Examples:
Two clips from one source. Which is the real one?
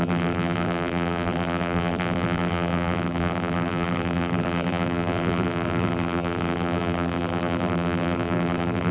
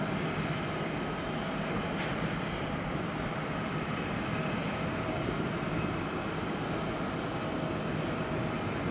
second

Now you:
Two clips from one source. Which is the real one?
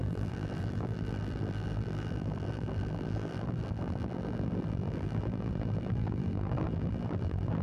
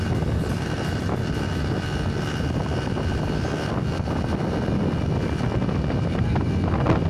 second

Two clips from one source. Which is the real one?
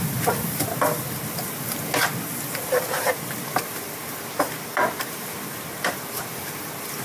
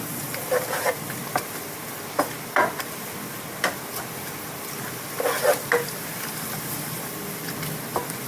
second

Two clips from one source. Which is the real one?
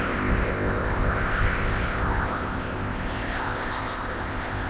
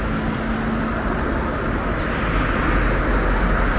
second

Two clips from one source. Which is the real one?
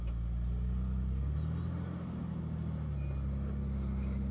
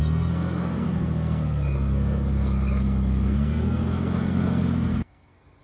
first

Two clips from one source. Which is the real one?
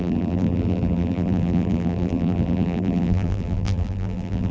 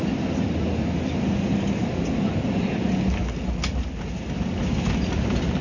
second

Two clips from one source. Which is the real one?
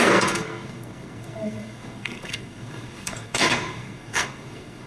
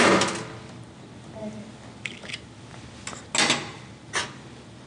second